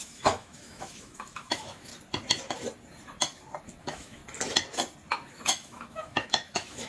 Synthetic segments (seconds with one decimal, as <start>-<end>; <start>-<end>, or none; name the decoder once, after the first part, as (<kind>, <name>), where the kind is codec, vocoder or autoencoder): 0.0-1.9 (autoencoder, DAC-VAE); 3.8-4.2; 5.3-6.9